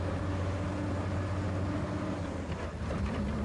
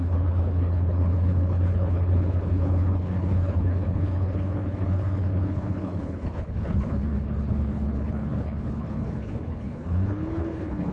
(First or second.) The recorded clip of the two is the first